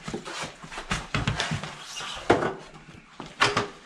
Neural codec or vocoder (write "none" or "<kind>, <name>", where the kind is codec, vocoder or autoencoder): none